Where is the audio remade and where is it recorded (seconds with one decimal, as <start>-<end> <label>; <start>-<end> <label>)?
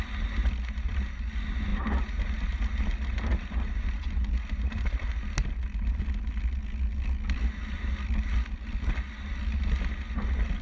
0.0-10.6 recorded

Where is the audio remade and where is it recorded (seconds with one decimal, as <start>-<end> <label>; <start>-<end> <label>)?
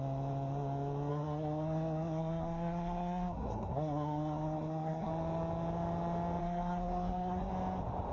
0.0-1.1 recorded; 1.1-5.1 remade; 5.1-6.4 recorded; 6.4-7.5 remade; 7.5-8.1 recorded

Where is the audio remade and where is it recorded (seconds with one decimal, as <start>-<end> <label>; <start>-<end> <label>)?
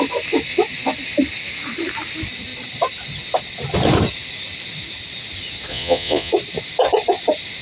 0.0-5.7 recorded; 5.7-6.3 remade; 6.3-7.6 recorded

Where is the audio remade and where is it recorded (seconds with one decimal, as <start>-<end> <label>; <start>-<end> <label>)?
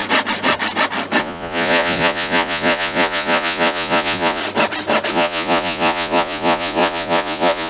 0.0-1.2 recorded; 1.2-4.4 remade; 4.4-5.1 recorded; 5.1-7.7 remade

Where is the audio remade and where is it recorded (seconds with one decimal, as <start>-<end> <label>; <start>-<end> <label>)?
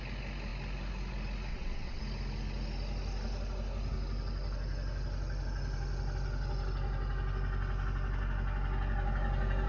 0.0-1.5 recorded; 1.5-2.0 remade; 2.0-9.7 recorded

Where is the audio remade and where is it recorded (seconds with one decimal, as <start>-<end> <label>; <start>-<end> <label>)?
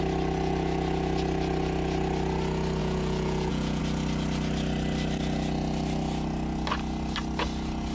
0.0-2.8 recorded; 2.8-3.8 remade; 3.8-7.9 recorded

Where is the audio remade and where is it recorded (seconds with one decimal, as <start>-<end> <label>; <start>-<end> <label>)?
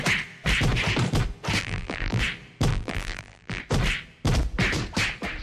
0.0-1.6 recorded; 1.6-2.2 remade; 2.2-2.7 recorded; 2.7-3.6 remade; 3.6-5.4 recorded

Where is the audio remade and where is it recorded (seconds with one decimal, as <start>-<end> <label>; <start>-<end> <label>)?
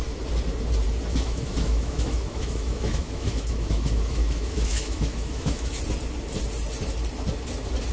0.0-1.1 recorded; 1.1-5.8 remade; 5.8-7.9 recorded